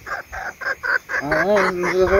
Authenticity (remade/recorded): recorded